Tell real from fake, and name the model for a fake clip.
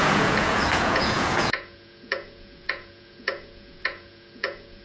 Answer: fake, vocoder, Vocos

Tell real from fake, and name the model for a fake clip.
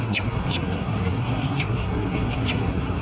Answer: fake, codec, SNAC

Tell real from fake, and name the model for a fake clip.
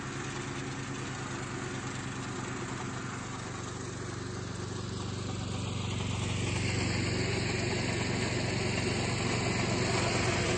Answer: real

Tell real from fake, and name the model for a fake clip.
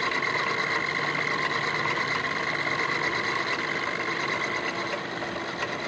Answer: real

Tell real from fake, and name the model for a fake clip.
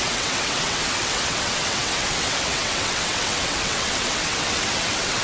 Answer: fake, vocoder, WaveNeXt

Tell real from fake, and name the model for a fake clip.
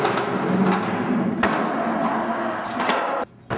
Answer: real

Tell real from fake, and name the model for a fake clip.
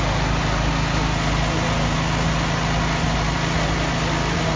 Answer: real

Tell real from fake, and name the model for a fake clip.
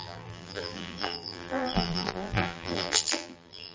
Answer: fake, vocoder, BigVGAN v2